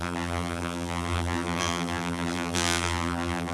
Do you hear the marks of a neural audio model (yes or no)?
yes